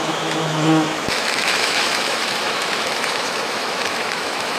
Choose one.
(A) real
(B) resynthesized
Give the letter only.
B